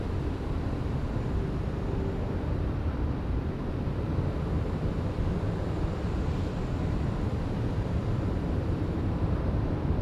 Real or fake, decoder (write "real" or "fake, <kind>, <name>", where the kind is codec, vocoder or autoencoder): fake, vocoder, BigVGAN v2